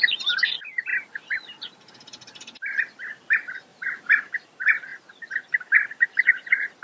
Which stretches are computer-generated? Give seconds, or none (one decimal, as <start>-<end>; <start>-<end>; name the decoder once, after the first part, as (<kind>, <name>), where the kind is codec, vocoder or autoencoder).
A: 3.7-4.3 (vocoder, BigVGAN v2)